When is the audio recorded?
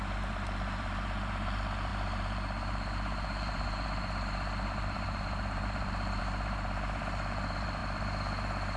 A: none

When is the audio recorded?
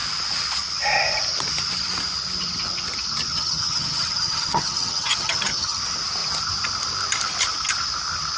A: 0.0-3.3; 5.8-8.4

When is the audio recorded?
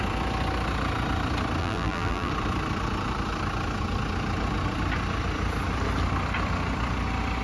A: 0.0-1.6; 2.3-7.4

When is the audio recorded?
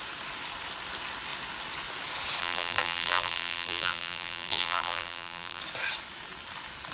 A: 0.0-2.4; 5.6-6.9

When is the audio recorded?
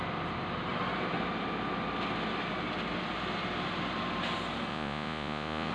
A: 0.0-4.7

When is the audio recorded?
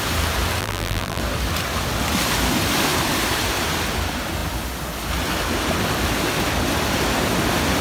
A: 0.0-0.6; 1.2-7.8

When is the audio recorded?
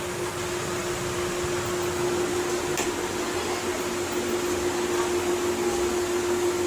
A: 0.0-6.7